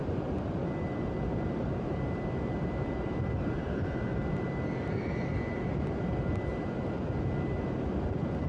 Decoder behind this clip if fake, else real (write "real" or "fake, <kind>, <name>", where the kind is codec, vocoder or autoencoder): real